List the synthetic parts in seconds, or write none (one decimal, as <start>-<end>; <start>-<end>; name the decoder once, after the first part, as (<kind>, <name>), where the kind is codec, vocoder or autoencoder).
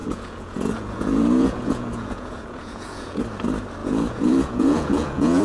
0.0-3.2 (vocoder, Vocos); 3.8-5.4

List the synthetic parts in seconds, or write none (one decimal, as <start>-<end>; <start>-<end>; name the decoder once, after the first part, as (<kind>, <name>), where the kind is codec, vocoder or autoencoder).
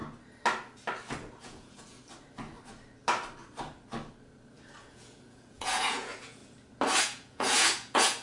1.4-2.0 (vocoder, Vocos); 4.8-6.4; 7.0-8.2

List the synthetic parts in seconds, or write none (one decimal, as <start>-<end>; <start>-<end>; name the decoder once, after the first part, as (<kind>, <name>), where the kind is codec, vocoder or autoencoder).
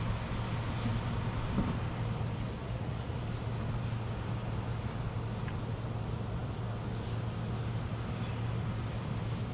2.6-3.2 (vocoder, Vocos)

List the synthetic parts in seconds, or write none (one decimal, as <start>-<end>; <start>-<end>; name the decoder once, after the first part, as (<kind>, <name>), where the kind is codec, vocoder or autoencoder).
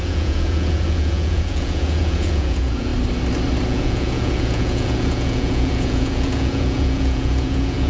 0.0-2.9 (vocoder, Vocos); 3.7-7.9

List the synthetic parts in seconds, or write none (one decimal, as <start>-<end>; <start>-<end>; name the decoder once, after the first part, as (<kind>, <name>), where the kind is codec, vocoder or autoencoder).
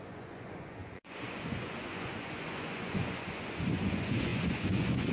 0.0-5.1 (vocoder, Vocos)